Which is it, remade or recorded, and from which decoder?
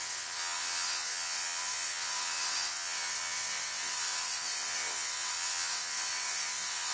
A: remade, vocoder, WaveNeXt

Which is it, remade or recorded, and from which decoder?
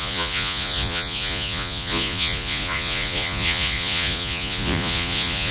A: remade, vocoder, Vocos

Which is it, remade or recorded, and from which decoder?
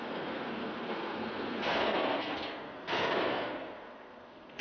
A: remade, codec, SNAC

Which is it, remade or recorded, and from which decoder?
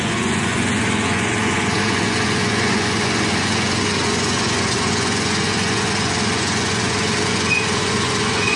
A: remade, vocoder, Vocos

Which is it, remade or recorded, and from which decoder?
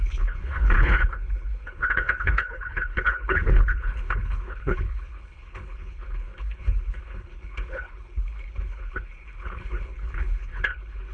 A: remade, codec, HILCodec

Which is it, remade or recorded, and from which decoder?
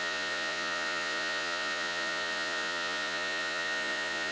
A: remade, vocoder, Vocos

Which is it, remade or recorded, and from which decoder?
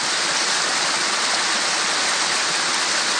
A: recorded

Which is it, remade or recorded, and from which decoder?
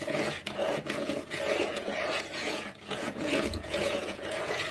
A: remade, vocoder, Vocos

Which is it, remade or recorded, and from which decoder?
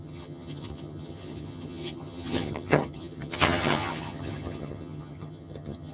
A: remade, vocoder, HiFi-GAN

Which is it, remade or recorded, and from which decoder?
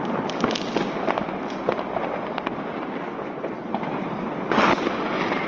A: recorded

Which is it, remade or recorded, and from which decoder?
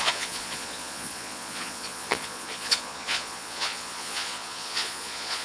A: remade, vocoder, Vocos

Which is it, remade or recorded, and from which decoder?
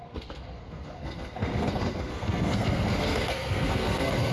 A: remade, codec, SNAC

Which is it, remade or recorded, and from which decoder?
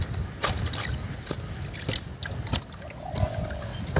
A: recorded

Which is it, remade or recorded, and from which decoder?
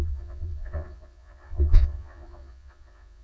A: remade, vocoder, Vocos